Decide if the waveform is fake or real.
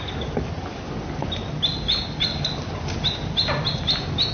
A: real